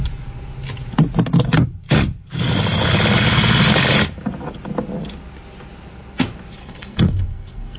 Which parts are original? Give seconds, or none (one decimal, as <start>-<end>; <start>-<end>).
0.0-6.6